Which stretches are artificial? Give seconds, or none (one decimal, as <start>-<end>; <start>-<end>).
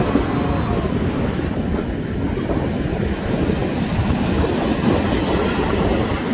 none